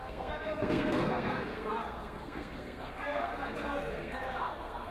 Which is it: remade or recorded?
remade